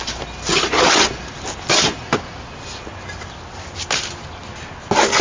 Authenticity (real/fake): real